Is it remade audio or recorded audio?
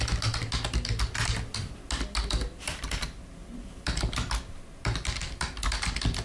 recorded